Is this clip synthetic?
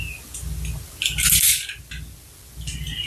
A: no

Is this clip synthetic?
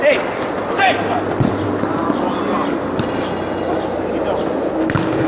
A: no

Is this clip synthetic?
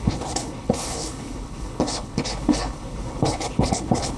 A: yes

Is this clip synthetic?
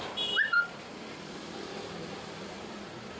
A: yes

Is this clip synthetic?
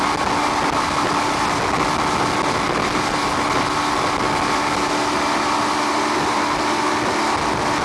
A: no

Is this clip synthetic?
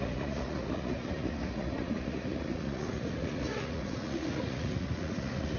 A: yes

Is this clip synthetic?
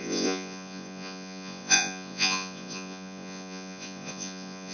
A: yes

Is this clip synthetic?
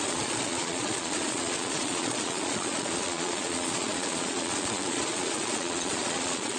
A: yes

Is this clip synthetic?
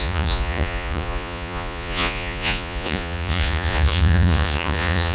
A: yes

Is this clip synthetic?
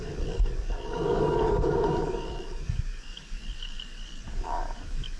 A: yes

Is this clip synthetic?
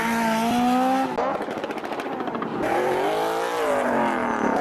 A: no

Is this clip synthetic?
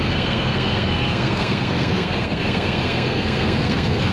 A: yes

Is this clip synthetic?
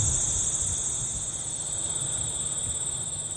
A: no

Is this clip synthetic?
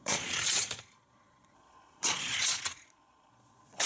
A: yes